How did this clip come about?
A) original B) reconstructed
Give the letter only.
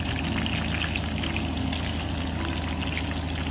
A